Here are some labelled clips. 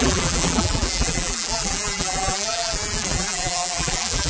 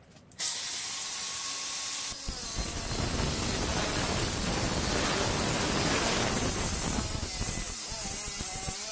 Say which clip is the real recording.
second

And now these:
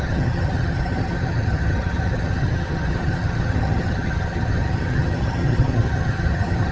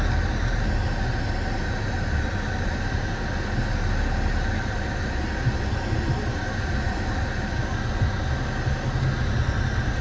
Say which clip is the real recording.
second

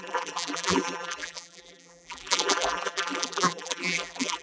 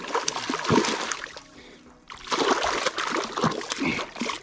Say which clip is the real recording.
second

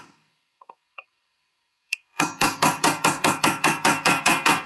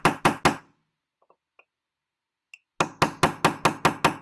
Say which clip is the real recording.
second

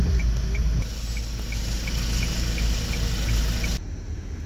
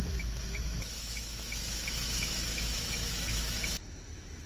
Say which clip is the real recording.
first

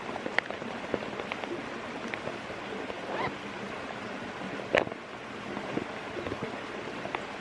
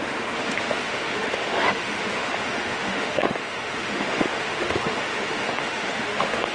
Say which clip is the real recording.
first